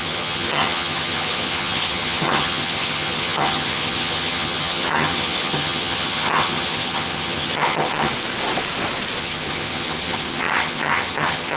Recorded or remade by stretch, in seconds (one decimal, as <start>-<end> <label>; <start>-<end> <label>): 0.0-8.1 remade; 8.1-9.2 recorded; 9.2-11.6 remade